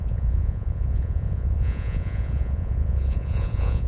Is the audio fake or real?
fake